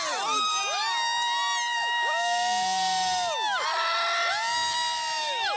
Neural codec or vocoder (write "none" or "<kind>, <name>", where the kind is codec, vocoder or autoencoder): none